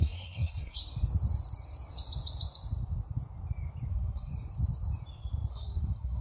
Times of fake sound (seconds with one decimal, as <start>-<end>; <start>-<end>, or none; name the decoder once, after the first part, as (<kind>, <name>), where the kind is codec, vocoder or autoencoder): 0.0-0.8 (codec, SNAC); 3.9-4.3; 5.5-6.2